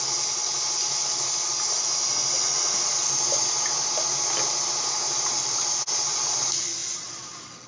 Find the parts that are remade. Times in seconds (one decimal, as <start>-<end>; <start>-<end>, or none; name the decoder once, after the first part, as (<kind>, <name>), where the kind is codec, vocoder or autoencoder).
none